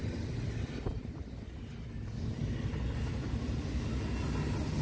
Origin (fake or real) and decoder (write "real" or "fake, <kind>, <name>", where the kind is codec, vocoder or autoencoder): real